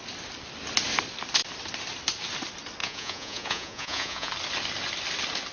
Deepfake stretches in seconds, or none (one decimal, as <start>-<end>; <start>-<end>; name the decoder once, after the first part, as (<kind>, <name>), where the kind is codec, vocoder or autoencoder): 2.8-4.3 (vocoder, Vocos)